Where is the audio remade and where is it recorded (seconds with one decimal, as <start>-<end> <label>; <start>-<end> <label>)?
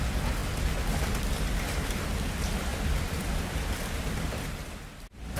0.0-2.7 recorded; 2.7-4.5 remade; 4.5-5.4 recorded